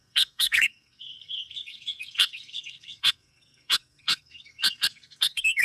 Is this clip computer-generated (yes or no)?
yes